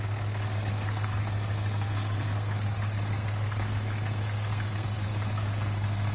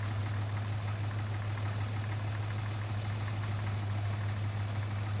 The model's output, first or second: first